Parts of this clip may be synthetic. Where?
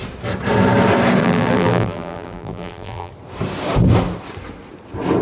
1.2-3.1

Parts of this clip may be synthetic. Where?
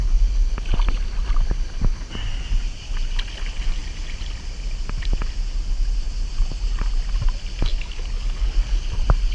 7.7-8.8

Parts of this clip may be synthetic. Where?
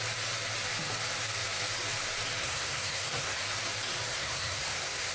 2.4-3.4; 4.1-5.1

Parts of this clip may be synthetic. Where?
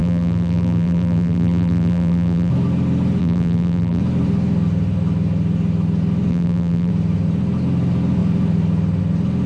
0.0-2.5; 3.2-4.0; 6.3-6.9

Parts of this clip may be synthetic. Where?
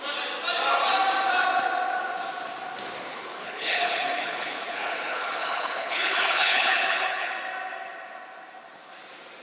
3.1-7.3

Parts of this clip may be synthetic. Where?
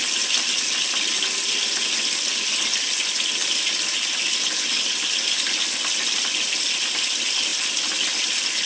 none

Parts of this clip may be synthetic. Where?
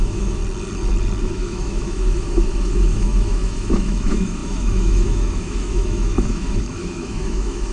0.0-0.4; 1.2-7.7